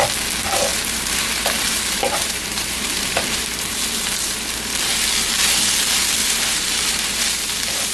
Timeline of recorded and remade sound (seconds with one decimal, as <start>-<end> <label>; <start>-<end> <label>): 0.0-0.7 recorded; 0.7-3.8 remade; 3.8-6.2 recorded; 6.2-7.2 remade; 7.2-7.9 recorded